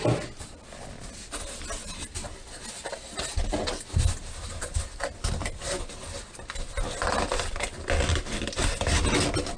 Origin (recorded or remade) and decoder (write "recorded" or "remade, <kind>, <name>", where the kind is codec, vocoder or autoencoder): recorded